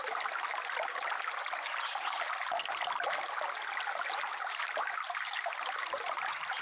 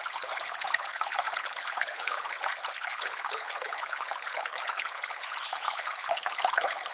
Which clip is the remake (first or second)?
second